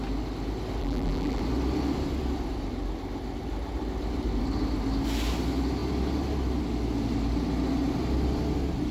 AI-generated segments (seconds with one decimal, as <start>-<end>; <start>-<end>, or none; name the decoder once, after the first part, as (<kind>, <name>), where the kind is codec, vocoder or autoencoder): 0.8-1.4 (vocoder, BigVGAN v2)